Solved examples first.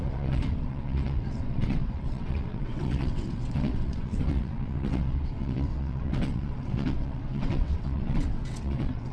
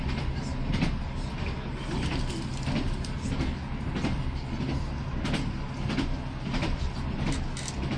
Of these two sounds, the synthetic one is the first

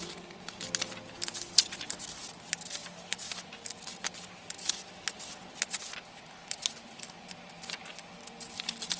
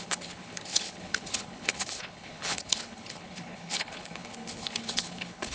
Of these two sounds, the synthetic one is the second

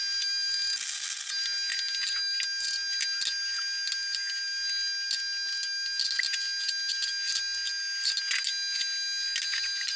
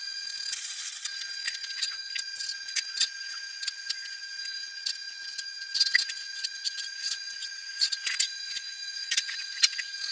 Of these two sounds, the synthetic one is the second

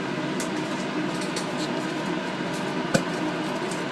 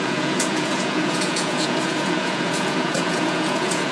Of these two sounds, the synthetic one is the second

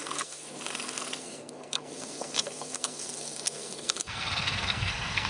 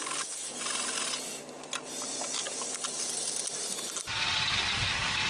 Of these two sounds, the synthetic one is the first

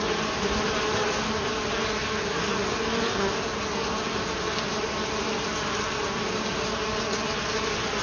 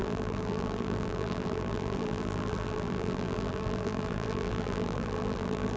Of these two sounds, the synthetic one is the second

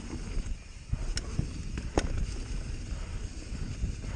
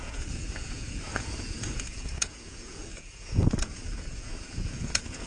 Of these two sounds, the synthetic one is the second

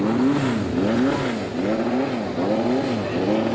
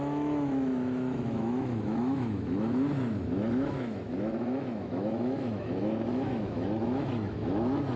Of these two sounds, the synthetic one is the second